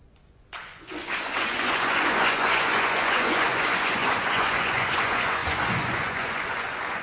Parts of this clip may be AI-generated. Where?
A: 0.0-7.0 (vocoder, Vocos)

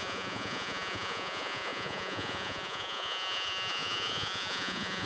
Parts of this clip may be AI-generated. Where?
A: 0.0-5.0 (vocoder, Vocos)

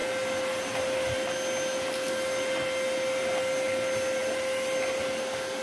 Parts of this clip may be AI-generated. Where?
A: none

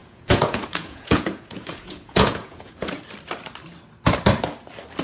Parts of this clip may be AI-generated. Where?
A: 0.0-3.0 (vocoder, Vocos)

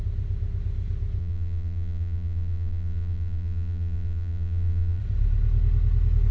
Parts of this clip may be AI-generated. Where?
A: 1.2-5.0 (vocoder, BigVGAN v2)

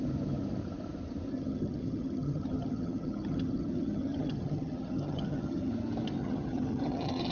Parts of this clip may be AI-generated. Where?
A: 1.3-5.7 (vocoder, HiFi-GAN); 6.2-7.3

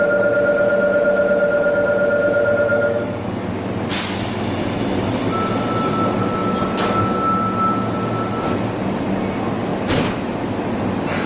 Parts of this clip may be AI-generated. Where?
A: 2.7-3.5 (codec, DAC)

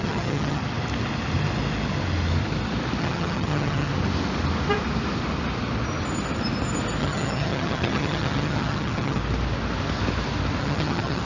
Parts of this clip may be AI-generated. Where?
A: 0.0-0.6 (vocoder, HiFi-GAN); 3.0-3.9; 7.0-9.2; 10.6-11.3